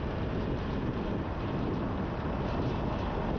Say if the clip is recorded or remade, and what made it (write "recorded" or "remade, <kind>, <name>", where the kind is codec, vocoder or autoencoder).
recorded